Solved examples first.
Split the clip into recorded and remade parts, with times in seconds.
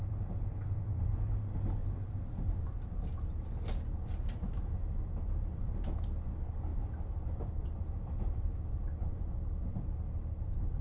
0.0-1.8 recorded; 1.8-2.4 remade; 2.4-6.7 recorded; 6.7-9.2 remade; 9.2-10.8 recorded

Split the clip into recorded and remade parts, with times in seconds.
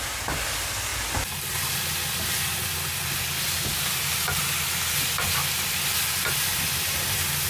0.0-7.5 recorded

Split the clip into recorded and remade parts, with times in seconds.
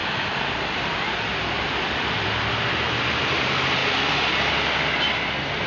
0.0-2.5 remade; 2.5-3.8 recorded; 3.8-5.7 remade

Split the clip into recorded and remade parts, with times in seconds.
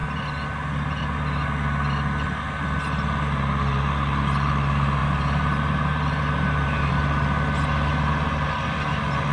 0.0-5.0 recorded; 5.0-6.9 remade; 6.9-9.3 recorded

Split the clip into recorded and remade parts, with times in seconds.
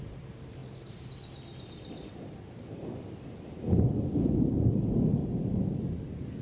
0.0-6.4 recorded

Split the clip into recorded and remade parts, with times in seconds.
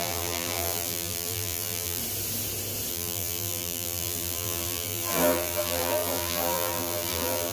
0.0-2.0 remade; 2.0-2.9 recorded; 2.9-7.5 remade